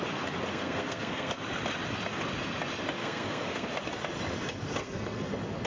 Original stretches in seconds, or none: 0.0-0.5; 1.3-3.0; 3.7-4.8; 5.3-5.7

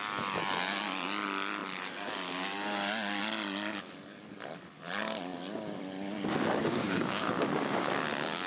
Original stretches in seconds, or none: 0.0-6.6; 7.9-8.5